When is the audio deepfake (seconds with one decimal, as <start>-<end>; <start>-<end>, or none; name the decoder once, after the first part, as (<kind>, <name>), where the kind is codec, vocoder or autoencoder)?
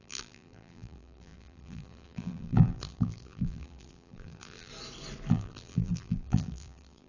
0.0-4.7 (vocoder, BigVGAN v2); 5.3-7.1